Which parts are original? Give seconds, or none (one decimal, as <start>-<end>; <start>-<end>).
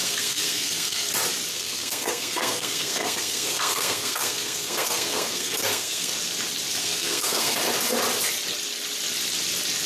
1.1-1.5; 6.1-6.8; 7.6-9.9